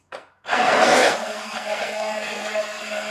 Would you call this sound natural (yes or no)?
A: no